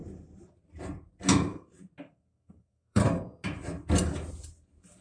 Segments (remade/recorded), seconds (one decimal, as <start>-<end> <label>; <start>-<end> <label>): 0.0-2.0 recorded; 2.0-3.0 remade; 3.0-5.0 recorded